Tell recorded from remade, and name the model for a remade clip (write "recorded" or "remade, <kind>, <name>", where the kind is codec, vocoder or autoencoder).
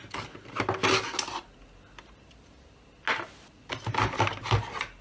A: recorded